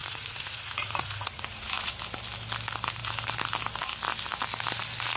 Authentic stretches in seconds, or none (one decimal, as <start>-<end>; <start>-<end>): 1.9-5.2

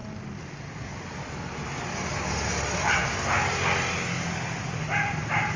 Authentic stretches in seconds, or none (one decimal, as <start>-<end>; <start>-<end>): 0.0-5.6

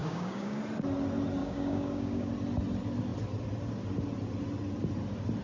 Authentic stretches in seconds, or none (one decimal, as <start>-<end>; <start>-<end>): 0.6-1.4; 2.3-5.4

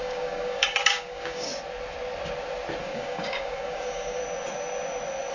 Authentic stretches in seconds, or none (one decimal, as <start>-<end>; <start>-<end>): 1.5-2.8; 4.2-5.3

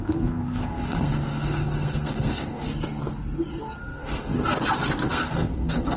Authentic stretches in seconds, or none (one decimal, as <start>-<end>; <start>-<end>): 2.7-3.8; 4.3-5.1

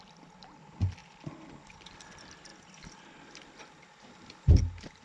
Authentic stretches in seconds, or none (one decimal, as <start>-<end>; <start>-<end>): 0.0-5.0